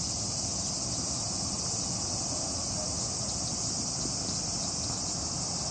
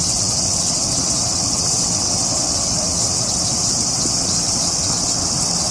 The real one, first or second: first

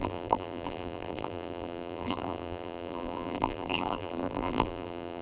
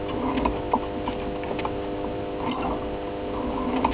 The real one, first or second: second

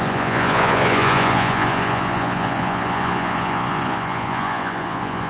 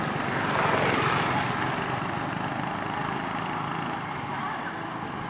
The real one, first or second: second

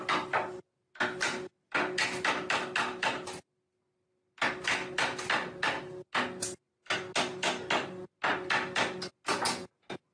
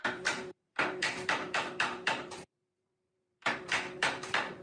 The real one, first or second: first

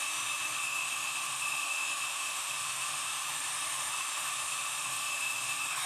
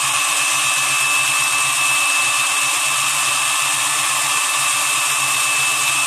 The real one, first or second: second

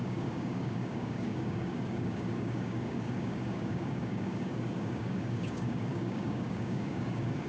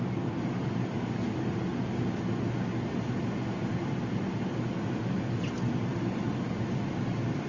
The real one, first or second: second